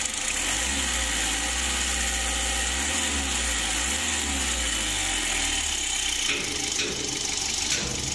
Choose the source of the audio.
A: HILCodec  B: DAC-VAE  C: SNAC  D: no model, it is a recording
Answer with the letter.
D